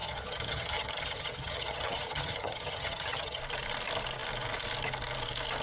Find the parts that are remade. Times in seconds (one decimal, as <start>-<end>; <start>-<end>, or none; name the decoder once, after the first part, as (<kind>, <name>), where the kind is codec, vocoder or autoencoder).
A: 0.0-3.4 (vocoder, HiFi-GAN)